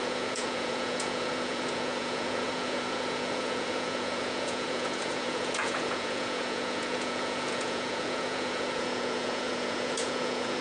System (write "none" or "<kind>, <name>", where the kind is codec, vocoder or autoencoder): vocoder, Vocos